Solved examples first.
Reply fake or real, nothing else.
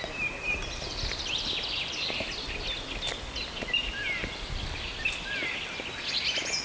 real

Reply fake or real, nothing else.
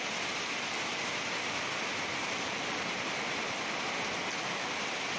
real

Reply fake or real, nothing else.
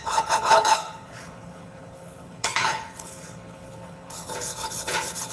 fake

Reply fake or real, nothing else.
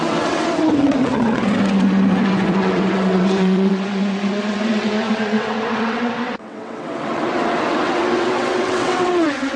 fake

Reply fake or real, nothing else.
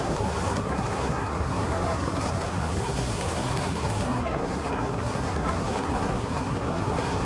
fake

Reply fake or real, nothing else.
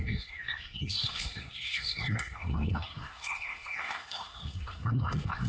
fake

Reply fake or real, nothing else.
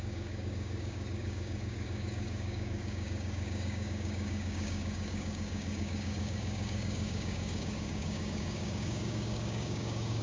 fake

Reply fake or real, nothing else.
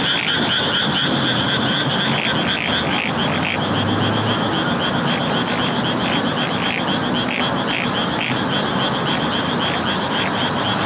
real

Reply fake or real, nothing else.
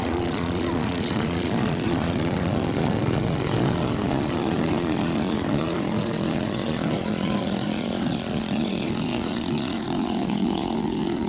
fake